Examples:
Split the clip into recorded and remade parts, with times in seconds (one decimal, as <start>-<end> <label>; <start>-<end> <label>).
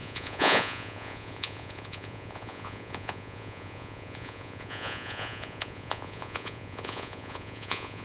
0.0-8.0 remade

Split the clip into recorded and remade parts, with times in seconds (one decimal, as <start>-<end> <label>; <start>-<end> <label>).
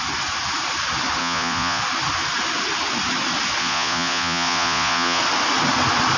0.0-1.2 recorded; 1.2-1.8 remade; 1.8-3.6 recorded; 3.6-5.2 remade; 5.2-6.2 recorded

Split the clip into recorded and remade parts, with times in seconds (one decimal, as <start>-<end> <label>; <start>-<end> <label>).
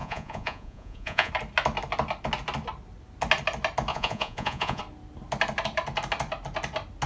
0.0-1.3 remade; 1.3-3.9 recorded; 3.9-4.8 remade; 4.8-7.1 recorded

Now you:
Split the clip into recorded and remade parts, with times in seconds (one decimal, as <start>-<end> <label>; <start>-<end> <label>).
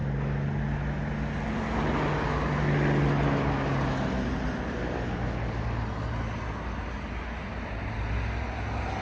0.0-9.0 recorded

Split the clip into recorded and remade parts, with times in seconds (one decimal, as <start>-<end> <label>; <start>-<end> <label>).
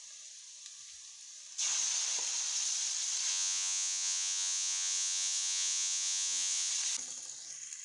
0.0-3.3 recorded; 3.3-6.7 remade; 6.7-7.8 recorded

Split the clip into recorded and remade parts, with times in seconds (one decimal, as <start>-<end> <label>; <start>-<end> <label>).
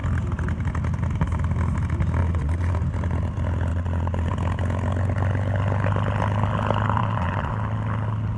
0.0-2.2 recorded; 2.2-2.7 remade; 2.7-3.7 recorded; 3.7-4.3 remade; 4.3-7.0 recorded; 7.0-7.5 remade; 7.5-8.4 recorded